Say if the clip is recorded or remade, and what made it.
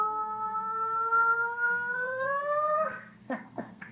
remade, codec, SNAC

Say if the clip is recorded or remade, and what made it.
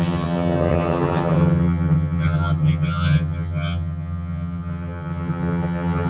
remade, vocoder, HiFi-GAN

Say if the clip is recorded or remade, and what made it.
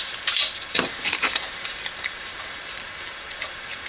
remade, vocoder, BigVGAN v2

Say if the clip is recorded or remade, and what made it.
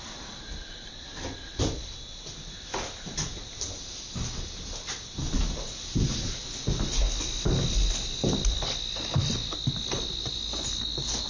recorded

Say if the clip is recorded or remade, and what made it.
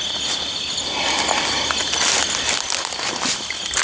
recorded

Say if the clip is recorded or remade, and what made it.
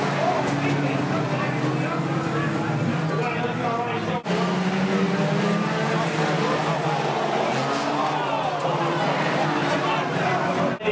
recorded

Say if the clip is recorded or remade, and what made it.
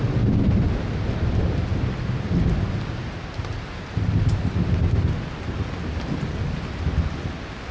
recorded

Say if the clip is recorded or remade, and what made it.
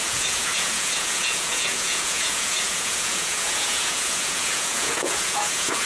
remade, vocoder, Vocos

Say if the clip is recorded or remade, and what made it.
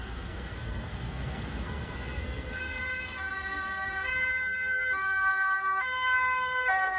remade, codec, SNAC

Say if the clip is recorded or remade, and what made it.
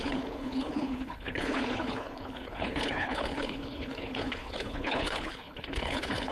remade, codec, HILCodec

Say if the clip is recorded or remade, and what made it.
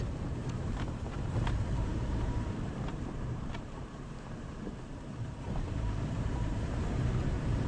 remade, vocoder, BigVGAN v2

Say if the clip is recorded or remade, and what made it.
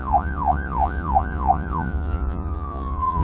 remade, vocoder, Vocos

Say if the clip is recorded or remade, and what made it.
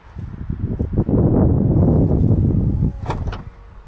recorded